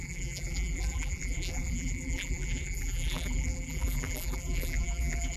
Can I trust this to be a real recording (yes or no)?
no